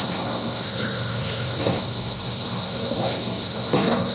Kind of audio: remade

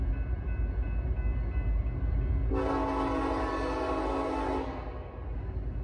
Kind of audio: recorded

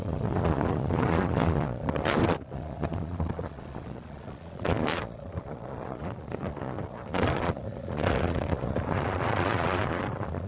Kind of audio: remade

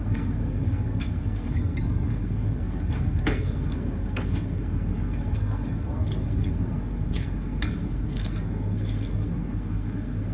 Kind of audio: remade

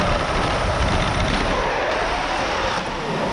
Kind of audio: recorded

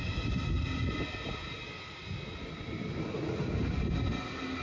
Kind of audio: recorded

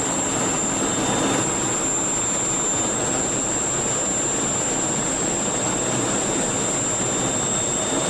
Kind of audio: recorded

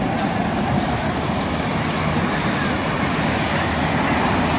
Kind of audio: recorded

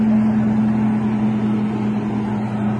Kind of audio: recorded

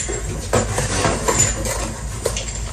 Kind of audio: recorded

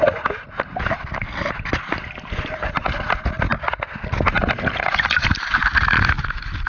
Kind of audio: recorded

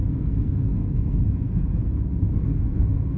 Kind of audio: remade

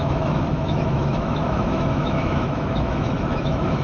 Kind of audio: remade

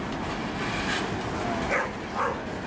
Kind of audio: recorded